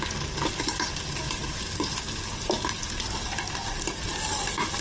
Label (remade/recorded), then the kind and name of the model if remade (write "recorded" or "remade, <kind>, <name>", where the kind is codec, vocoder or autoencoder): recorded